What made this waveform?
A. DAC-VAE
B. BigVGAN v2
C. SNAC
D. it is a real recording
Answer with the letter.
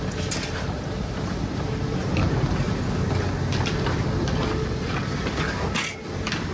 D